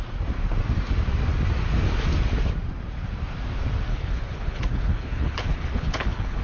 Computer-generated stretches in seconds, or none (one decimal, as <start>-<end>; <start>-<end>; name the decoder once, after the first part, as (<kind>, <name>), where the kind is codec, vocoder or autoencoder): 3.9-6.4 (codec, HILCodec)